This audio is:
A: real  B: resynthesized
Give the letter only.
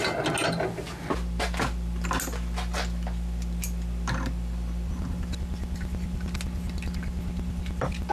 A